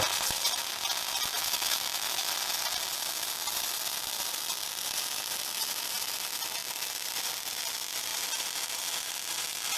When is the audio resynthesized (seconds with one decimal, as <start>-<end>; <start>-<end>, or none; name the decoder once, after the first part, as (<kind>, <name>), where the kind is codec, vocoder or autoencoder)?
1.4-2.3 (autoencoder, DAC-VAE)